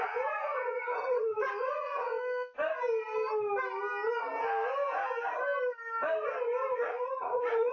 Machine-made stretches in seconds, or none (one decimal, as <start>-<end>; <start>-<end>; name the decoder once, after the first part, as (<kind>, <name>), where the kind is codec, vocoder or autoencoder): 0.0-2.1 (vocoder, Vocos); 6.7-7.7

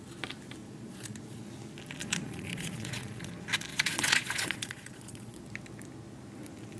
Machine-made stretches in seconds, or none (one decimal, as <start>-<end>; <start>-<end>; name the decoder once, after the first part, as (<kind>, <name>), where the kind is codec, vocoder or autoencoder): 0.6-1.5 (vocoder, Vocos); 2.0-3.3; 3.7-5.4

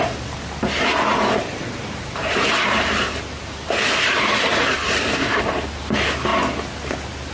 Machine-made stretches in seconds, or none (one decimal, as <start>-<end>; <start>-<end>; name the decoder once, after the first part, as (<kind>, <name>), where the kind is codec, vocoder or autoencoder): 1.1-5.5 (vocoder, BigVGAN v2)